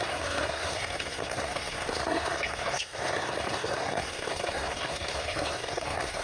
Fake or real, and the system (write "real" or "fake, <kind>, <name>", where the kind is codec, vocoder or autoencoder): fake, codec, SNAC